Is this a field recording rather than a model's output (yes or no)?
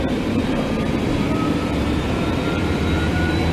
no